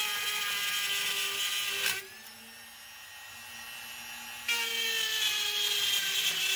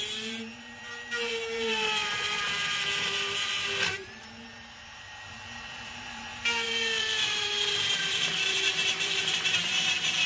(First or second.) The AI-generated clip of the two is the second